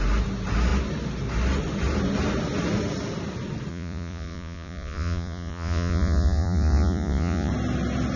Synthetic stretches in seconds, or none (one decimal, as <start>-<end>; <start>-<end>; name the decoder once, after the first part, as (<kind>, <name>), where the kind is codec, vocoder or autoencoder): 3.7-7.5 (vocoder, Vocos)